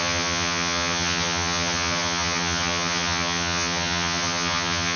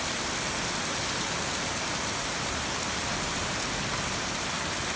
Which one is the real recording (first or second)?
second